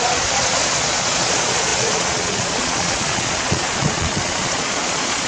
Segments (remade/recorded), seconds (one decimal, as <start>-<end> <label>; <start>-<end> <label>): 0.0-5.3 remade